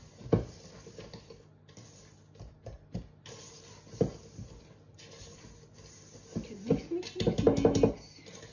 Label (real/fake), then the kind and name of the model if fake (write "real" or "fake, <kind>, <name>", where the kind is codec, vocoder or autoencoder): real